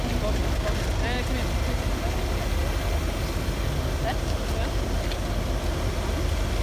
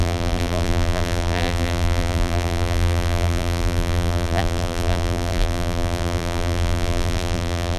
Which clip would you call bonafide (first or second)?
first